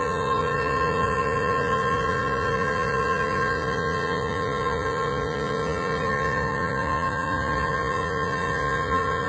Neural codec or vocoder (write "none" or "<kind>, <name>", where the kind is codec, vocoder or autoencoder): vocoder, Vocos